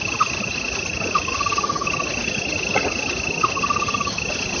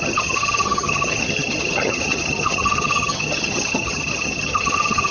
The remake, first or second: second